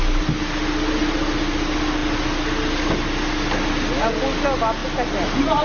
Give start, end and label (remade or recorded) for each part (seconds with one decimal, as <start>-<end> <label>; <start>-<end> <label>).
0.0-5.6 recorded